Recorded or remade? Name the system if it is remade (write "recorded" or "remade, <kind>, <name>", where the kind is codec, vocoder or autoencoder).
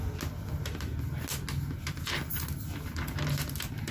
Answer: recorded